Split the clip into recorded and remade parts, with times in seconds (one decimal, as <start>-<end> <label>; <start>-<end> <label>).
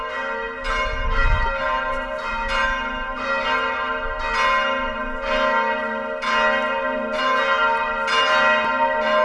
0.0-9.2 recorded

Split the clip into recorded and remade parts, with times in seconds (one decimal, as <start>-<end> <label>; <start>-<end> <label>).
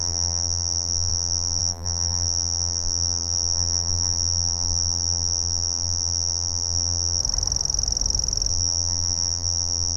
0.0-7.2 remade; 7.2-8.5 recorded; 8.5-10.0 remade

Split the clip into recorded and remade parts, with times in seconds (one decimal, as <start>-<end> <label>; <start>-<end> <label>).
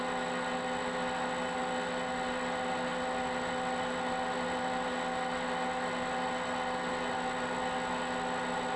0.0-8.8 recorded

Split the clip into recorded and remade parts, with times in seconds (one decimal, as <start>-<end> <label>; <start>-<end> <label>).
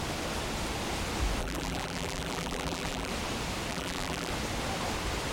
0.0-1.4 recorded; 1.4-3.1 remade; 3.1-3.7 recorded; 3.7-4.3 remade; 4.3-5.3 recorded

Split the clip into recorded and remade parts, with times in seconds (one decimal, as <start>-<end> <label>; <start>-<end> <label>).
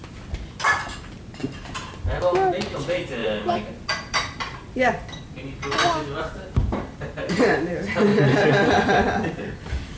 0.0-0.7 remade; 0.7-1.4 recorded; 1.4-2.2 remade; 2.2-3.2 recorded; 3.2-7.7 remade; 7.7-8.1 recorded; 8.1-10.0 remade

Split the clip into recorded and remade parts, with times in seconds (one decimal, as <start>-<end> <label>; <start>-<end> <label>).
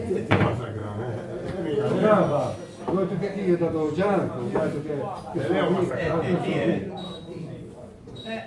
0.0-0.8 remade; 0.8-5.9 recorded; 5.9-8.5 remade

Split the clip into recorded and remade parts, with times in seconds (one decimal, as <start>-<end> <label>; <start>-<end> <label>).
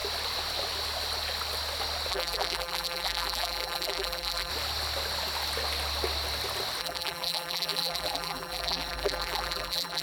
0.0-2.1 recorded; 2.1-4.5 remade; 4.5-6.8 recorded; 6.8-10.0 remade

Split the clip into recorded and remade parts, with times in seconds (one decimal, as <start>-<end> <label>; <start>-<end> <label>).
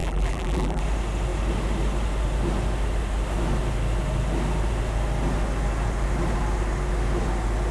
0.0-0.8 remade; 0.8-7.7 recorded